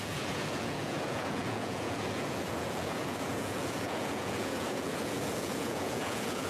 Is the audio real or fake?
fake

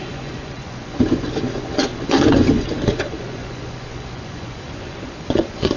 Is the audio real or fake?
fake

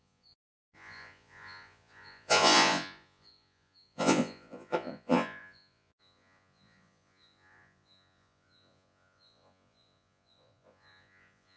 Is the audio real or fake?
fake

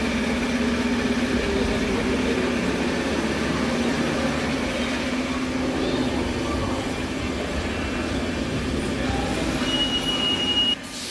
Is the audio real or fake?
real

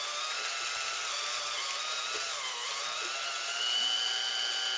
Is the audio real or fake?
real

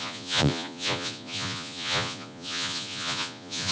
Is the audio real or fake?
fake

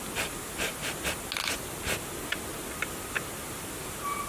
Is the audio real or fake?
real